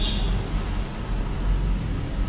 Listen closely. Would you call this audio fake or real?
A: real